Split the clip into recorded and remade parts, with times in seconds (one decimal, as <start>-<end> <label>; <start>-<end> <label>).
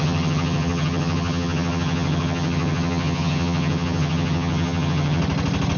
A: 0.0-5.2 remade; 5.2-5.8 recorded